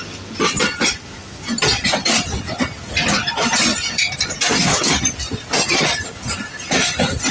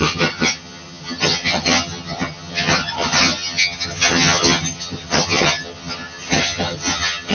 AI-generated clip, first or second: second